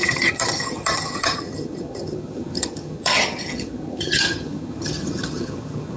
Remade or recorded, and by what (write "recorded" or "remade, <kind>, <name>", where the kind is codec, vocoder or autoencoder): remade, vocoder, HiFi-GAN